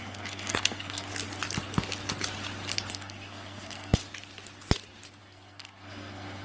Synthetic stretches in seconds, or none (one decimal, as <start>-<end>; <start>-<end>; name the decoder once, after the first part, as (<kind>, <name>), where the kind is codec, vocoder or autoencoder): 0.0-1.1 (codec, SNAC); 2.9-4.0; 5.2-6.4